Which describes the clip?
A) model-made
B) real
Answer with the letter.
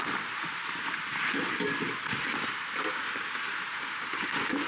B